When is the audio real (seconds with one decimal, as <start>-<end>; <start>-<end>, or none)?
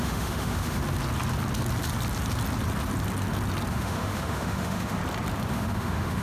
0.8-3.7; 5.0-5.5